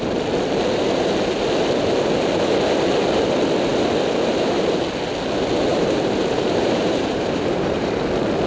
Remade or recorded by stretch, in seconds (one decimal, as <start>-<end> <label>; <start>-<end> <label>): 0.0-5.7 recorded; 5.7-7.9 remade; 7.9-8.5 recorded